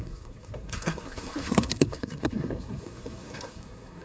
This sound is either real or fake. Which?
fake